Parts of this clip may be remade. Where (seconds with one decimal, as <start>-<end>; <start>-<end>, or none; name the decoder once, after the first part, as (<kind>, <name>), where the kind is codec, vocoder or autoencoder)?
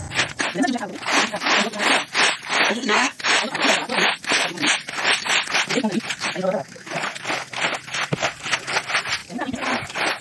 2.7-3.2 (codec, SNAC)